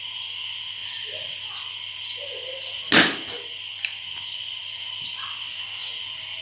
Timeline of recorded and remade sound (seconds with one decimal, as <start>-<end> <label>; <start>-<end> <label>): 0.0-6.4 recorded